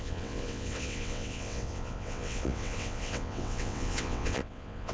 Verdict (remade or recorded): remade